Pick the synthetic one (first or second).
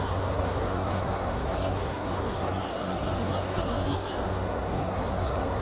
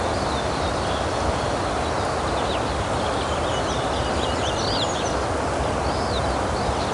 first